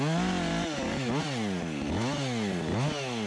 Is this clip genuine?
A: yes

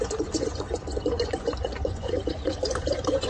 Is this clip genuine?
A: no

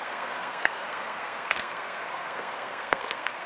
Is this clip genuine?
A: no